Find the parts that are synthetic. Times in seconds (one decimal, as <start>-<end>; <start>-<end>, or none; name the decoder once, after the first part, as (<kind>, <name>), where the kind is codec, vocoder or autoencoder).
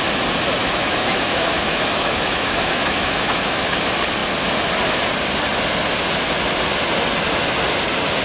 0.6-3.8 (autoencoder, DAC-VAE)